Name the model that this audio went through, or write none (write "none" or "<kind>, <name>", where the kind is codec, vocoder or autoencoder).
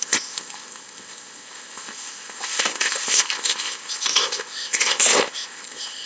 codec, ZipCodec